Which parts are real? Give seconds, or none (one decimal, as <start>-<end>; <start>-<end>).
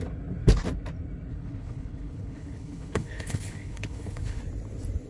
0.0-1.3; 4.4-5.1